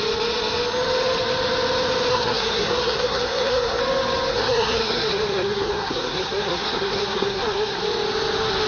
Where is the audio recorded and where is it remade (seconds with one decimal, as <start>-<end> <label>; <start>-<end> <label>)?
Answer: 0.0-2.1 recorded; 2.1-3.8 remade; 3.8-4.3 recorded; 4.3-7.8 remade; 7.8-8.7 recorded